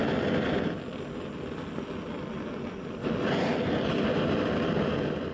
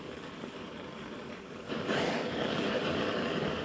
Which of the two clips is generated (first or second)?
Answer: second